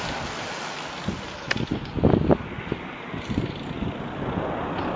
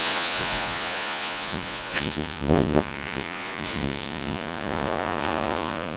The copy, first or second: second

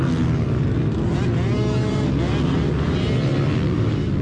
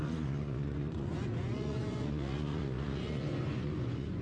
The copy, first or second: second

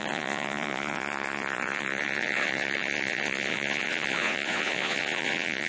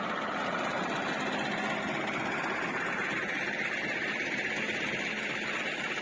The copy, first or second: first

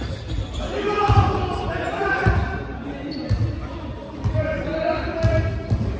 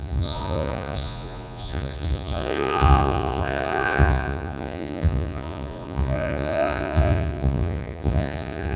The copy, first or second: second